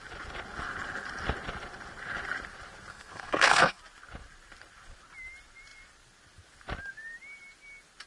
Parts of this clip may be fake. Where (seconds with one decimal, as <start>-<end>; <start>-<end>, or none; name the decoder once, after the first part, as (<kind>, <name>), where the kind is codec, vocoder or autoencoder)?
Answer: 2.9-3.8 (codec, SNAC)